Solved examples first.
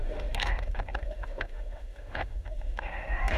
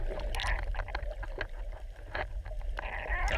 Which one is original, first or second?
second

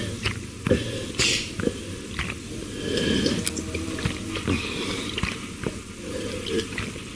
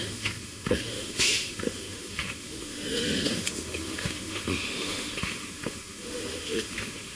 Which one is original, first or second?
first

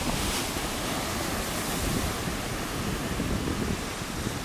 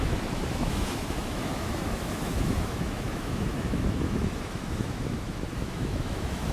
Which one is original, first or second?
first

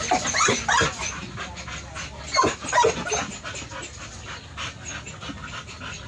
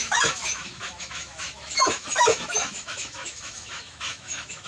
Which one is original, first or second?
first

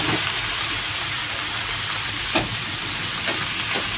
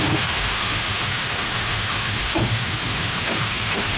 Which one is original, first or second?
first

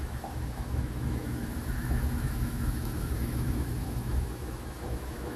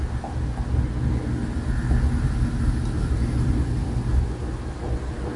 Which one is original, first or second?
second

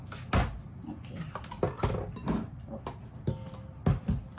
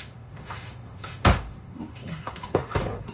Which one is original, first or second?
first